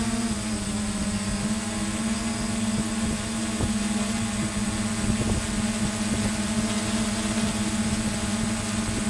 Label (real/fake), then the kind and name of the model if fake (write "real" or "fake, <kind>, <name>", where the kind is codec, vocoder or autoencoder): real